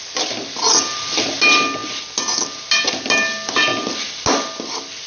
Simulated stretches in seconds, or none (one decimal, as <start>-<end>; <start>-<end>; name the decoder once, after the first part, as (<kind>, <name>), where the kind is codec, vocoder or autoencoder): none